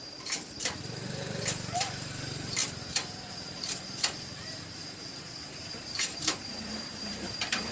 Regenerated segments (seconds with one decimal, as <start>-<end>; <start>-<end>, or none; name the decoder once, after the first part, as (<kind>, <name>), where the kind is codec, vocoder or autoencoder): 0.0-2.6 (vocoder, BigVGAN v2); 3.3-7.7